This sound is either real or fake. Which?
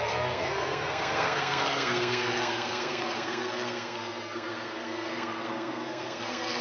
fake